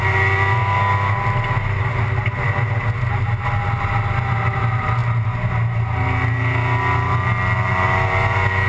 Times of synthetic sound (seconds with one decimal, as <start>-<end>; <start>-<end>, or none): none